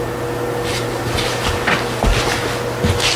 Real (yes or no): yes